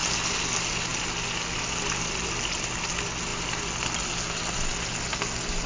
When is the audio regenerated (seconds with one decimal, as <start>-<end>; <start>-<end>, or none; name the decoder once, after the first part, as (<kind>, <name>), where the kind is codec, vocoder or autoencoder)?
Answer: none